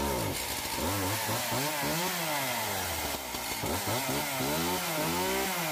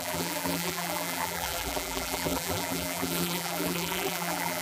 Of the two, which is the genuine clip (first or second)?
first